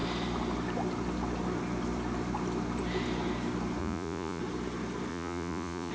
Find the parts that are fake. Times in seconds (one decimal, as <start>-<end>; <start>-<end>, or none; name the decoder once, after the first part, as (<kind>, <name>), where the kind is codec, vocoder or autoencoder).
3.8-4.4 (vocoder, Vocos); 5.1-5.9